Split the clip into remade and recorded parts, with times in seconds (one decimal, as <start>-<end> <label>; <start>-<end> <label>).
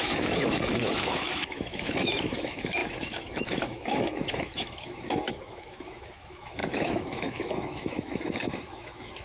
0.0-9.2 remade